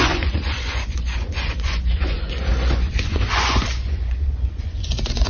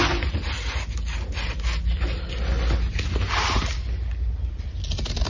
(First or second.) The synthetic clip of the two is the first